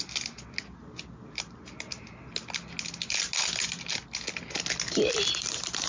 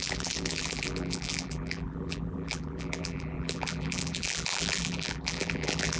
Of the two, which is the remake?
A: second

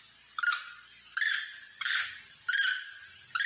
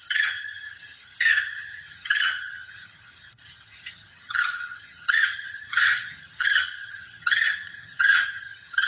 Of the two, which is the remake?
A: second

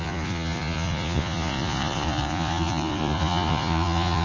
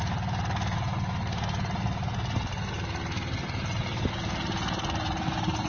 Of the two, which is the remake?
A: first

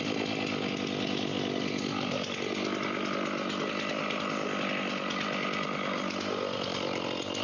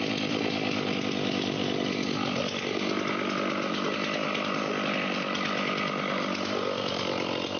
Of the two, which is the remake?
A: second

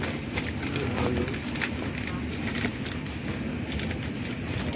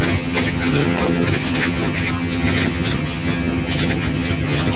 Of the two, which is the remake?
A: second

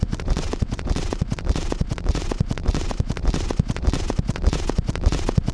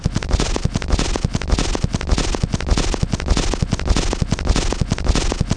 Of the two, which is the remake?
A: first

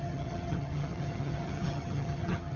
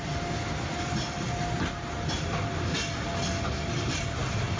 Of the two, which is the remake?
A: first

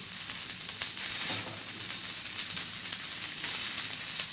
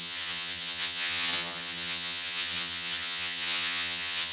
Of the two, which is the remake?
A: second